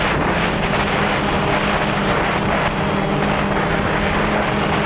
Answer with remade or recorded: recorded